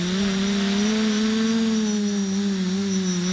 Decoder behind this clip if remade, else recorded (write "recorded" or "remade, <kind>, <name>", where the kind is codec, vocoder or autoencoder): recorded